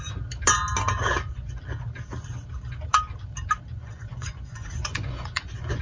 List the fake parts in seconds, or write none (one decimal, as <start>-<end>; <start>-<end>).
1.1-1.6; 3.8-5.8